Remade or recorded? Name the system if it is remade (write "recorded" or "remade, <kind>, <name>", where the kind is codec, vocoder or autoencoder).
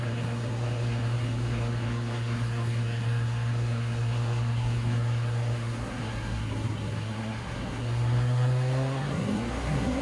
remade, codec, SNAC